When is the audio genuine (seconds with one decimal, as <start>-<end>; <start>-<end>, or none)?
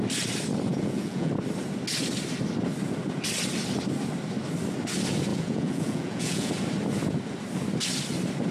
0.0-0.7; 1.3-5.3; 6.5-8.5